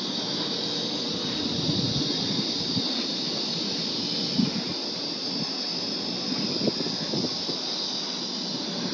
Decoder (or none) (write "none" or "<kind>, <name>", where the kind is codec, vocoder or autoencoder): none